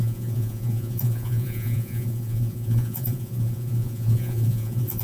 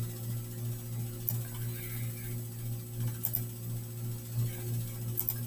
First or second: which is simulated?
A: first